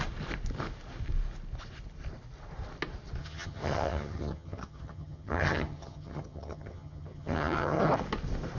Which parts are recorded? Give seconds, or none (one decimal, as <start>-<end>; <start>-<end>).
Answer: 0.0-3.2; 7.8-8.6